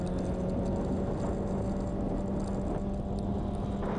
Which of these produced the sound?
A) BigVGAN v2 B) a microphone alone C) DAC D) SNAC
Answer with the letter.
B